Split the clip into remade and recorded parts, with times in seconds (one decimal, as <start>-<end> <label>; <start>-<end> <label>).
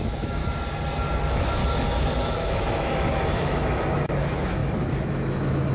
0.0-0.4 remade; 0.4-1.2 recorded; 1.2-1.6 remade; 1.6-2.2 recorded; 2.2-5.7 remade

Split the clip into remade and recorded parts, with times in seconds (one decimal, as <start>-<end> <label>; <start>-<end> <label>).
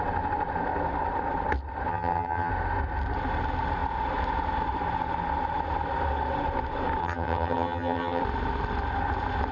0.0-1.9 recorded; 1.9-2.5 remade; 2.5-7.0 recorded; 7.0-8.2 remade; 8.2-9.5 recorded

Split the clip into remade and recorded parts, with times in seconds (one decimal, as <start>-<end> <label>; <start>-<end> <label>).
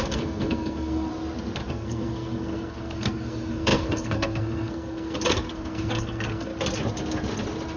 0.0-1.1 remade; 1.1-1.7 recorded; 1.7-6.5 remade; 6.5-7.8 recorded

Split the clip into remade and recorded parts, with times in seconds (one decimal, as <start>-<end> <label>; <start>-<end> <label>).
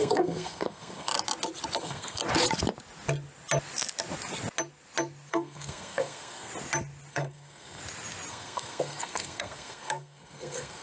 0.0-1.1 remade; 1.1-1.8 recorded; 1.8-2.2 remade; 2.2-5.3 recorded; 5.3-6.5 remade; 6.5-7.1 recorded; 7.1-7.8 remade; 7.8-8.3 recorded; 8.3-10.8 remade